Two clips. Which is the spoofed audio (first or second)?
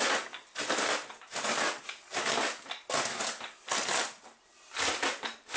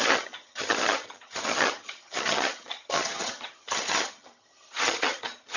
second